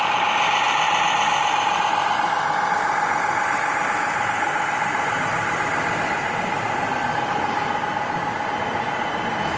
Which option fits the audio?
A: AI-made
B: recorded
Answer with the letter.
B